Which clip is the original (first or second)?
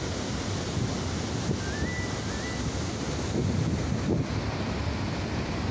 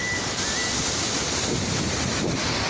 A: first